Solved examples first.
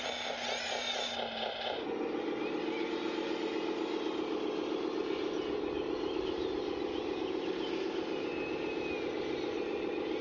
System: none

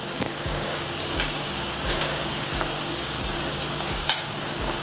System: codec, DAC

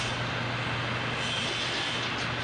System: none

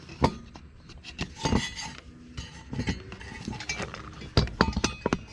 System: none